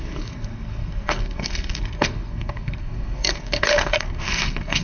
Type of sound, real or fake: fake